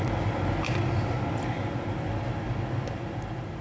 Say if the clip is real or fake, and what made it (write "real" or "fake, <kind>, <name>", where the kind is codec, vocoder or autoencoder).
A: real